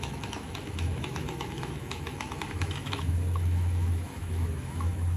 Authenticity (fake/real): fake